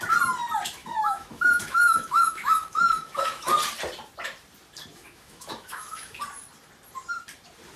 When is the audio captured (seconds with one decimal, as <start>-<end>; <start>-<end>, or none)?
0.0-0.8; 3.5-4.9; 6.2-7.8